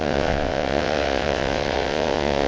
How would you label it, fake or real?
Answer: fake